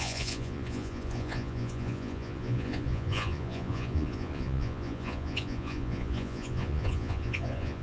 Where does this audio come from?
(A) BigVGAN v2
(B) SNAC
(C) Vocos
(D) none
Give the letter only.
C